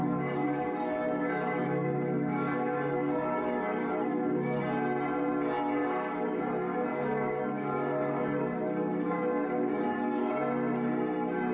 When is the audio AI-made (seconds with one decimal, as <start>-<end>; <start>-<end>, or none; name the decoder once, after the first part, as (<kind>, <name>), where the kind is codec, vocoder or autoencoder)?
0.0-4.6 (codec, DAC); 5.8-6.4; 6.9-10.3